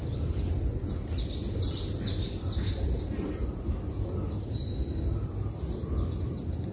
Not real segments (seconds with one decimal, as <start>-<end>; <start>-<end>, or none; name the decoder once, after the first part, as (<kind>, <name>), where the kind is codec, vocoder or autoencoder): none